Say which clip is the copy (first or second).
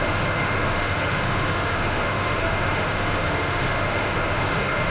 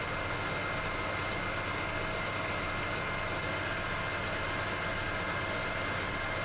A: first